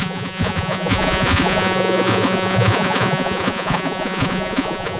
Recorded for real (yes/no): no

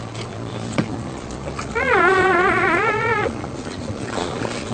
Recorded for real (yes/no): no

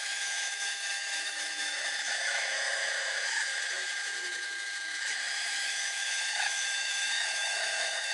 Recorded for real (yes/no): no